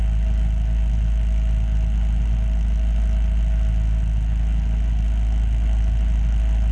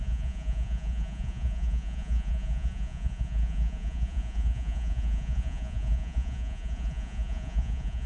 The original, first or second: first